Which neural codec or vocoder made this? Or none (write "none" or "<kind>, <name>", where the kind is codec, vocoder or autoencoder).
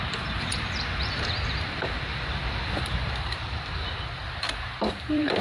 vocoder, BigVGAN v2